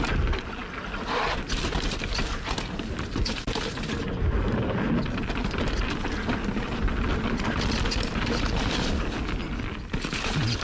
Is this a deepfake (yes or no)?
no